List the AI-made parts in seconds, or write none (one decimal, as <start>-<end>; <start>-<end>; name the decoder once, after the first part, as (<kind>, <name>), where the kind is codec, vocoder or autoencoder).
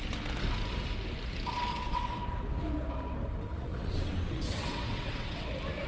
1.7-2.2 (vocoder, WaveNeXt); 3.5-5.5